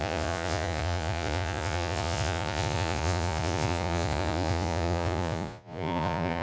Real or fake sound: fake